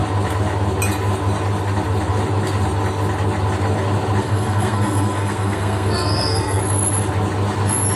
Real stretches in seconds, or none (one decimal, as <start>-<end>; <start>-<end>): 0.0-4.2; 6.6-8.0